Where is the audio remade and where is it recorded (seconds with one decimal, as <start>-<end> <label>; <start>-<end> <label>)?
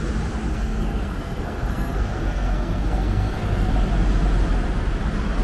0.0-0.5 recorded; 0.5-3.7 remade; 3.7-5.4 recorded